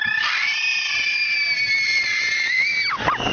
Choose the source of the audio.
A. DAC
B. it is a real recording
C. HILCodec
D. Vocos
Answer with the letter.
B